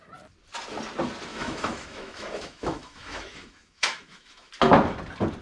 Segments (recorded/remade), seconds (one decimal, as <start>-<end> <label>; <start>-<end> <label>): 0.0-1.3 recorded; 1.3-4.5 remade; 4.5-5.4 recorded